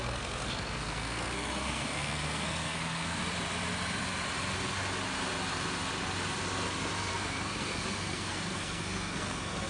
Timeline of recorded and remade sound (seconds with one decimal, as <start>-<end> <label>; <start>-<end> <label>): 0.0-3.2 remade; 3.2-7.1 recorded; 7.1-9.7 remade